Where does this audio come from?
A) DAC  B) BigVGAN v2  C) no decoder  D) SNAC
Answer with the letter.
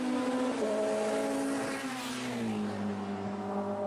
C